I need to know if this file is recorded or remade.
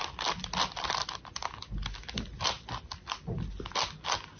recorded